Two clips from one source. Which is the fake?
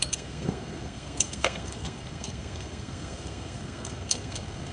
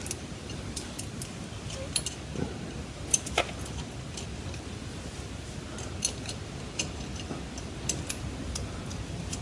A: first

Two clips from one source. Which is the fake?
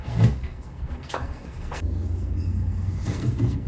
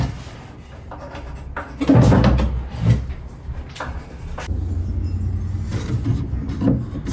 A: first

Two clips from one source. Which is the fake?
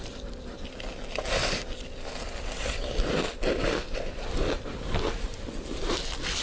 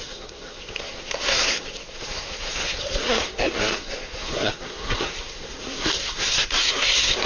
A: second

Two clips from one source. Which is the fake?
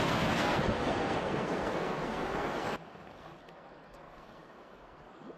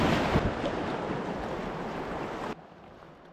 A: first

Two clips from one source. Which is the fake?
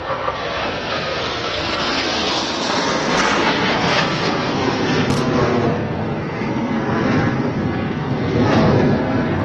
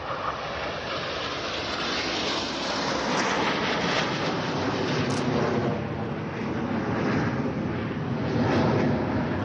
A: first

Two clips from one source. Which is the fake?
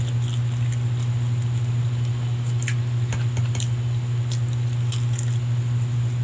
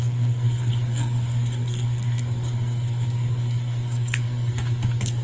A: second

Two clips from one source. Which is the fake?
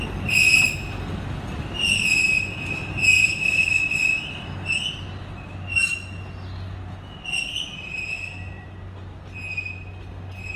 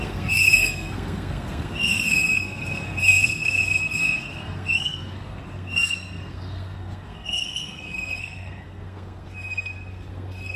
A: second